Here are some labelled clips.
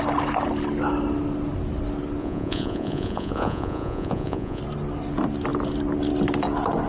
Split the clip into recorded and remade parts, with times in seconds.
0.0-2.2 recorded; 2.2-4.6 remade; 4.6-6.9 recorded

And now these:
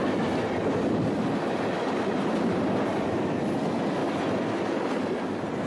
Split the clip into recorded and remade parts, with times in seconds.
0.0-5.7 recorded

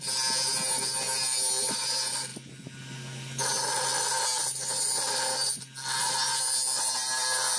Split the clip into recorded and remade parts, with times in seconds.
0.0-7.6 recorded

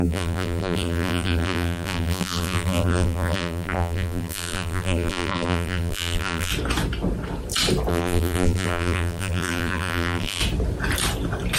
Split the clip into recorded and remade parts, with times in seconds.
0.0-6.5 remade; 6.5-7.9 recorded; 7.9-10.4 remade; 10.4-11.6 recorded

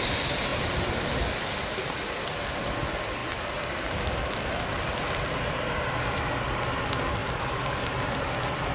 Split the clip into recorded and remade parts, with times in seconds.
0.0-0.5 recorded; 0.5-1.1 remade; 1.1-8.7 recorded

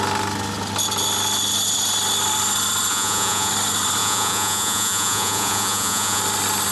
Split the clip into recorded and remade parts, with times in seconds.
0.0-2.9 recorded; 2.9-3.5 remade; 3.5-4.0 recorded; 4.0-6.2 remade; 6.2-6.7 recorded

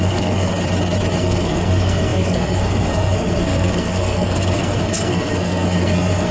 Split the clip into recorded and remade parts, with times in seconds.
0.0-0.5 remade; 0.5-1.2 recorded; 1.2-6.3 remade

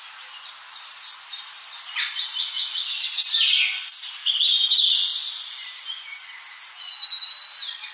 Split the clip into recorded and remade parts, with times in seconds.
0.0-7.9 recorded